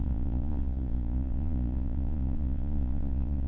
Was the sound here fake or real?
fake